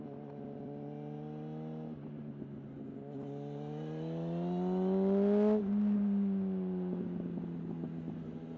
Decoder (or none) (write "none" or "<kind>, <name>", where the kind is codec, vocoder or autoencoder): none